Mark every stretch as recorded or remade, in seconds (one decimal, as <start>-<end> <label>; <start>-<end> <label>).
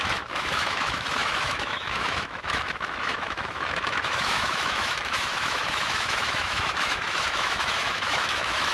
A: 0.0-8.7 remade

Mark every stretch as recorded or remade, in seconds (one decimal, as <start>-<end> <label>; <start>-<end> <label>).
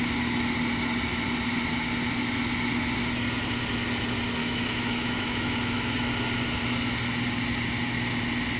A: 0.0-4.4 recorded; 4.4-6.1 remade; 6.1-8.6 recorded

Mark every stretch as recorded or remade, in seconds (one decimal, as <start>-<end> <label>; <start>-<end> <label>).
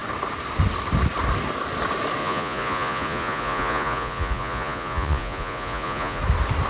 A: 0.0-2.2 recorded; 2.2-6.2 remade; 6.2-6.7 recorded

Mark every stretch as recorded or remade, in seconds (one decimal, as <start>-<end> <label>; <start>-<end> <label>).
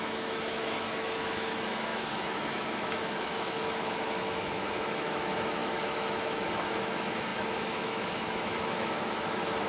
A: 0.0-9.7 remade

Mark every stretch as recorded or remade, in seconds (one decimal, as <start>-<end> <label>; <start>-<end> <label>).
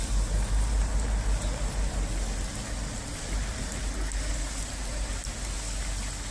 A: 0.0-6.3 recorded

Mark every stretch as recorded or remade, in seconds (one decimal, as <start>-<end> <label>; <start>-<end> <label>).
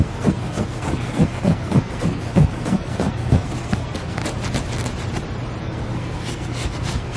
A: 0.0-4.2 remade; 4.2-5.6 recorded; 5.6-7.2 remade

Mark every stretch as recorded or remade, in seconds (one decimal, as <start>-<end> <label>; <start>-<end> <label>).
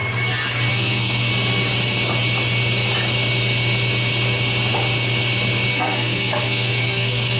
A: 0.0-0.7 recorded; 0.7-1.3 remade; 1.3-5.7 recorded; 5.7-7.4 remade